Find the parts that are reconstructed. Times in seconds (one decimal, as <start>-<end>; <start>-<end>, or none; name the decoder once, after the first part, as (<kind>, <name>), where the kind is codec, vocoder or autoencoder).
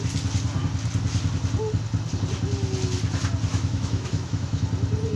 3.5-4.6 (autoencoder, DAC-VAE)